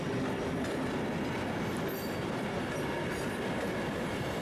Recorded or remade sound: recorded